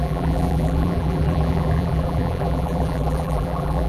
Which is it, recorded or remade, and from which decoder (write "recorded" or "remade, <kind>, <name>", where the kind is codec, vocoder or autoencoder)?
remade, vocoder, BigVGAN v2